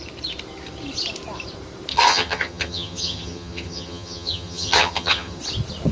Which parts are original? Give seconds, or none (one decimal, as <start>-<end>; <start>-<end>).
0.0-1.9; 5.4-5.9